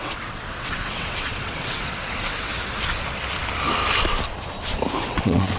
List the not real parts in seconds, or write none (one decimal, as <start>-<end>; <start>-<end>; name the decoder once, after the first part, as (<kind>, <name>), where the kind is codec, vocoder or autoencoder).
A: 0.0-2.5 (vocoder, WaveNeXt); 5.0-5.6

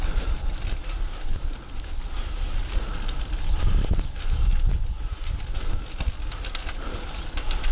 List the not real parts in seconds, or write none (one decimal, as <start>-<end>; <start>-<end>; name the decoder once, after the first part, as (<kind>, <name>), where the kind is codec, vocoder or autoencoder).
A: none

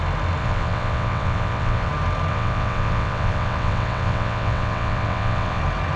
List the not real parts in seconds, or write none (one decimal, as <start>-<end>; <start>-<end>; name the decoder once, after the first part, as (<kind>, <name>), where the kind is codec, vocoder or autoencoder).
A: 0.4-1.9 (vocoder, WaveNeXt); 2.3-5.6

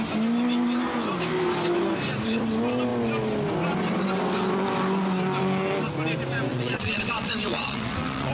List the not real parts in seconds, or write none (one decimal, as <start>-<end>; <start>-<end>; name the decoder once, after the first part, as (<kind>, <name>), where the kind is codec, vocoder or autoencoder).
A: 6.5-8.3 (vocoder, WaveNeXt)

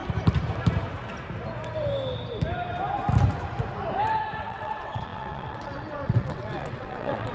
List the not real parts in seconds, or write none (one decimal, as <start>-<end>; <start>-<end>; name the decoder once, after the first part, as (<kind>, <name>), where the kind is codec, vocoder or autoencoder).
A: 4.4-7.3 (vocoder, WaveNeXt)

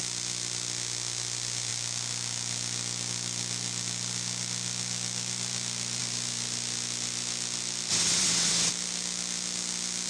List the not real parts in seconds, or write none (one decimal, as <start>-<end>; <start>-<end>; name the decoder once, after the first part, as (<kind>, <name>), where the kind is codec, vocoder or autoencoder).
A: 7.9-8.7 (vocoder, WaveNeXt)

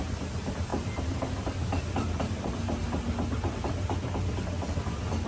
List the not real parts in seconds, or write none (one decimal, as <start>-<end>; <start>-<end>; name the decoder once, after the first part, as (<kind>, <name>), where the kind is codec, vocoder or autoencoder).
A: none